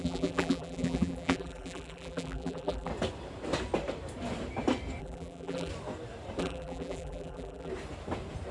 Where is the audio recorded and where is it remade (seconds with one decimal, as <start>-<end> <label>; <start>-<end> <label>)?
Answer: 0.0-2.9 remade; 2.9-5.0 recorded; 5.0-5.7 remade; 5.7-6.4 recorded; 6.4-7.7 remade; 7.7-8.5 recorded